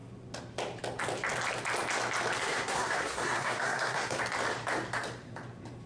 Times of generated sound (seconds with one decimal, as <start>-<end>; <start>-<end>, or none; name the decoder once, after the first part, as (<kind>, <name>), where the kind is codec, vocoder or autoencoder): 2.4-4.2 (codec, SNAC)